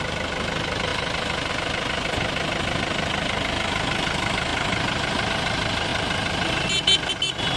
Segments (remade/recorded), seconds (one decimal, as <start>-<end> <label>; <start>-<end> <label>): 0.0-7.6 recorded